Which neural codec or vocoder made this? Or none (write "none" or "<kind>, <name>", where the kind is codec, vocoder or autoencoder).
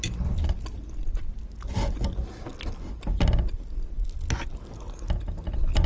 none